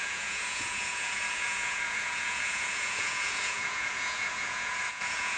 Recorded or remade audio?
remade